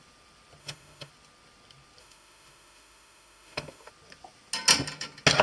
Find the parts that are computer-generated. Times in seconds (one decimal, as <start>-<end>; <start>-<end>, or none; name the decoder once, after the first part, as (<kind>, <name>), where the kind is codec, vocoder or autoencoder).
0.6-1.1 (autoencoder, DAC-VAE); 2.0-3.9